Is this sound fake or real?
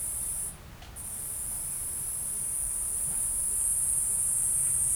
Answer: real